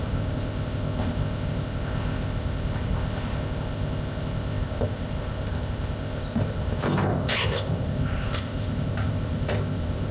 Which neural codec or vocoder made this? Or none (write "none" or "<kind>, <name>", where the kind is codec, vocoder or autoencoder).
codec, ZipCodec